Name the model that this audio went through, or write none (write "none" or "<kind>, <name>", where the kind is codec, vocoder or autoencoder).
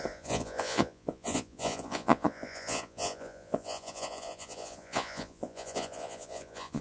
vocoder, Vocos